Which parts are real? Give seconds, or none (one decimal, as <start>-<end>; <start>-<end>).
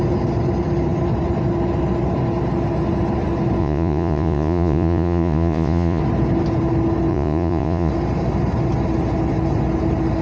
0.0-3.6; 6.0-7.1; 7.9-10.2